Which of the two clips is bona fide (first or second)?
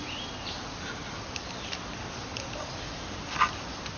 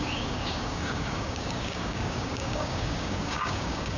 first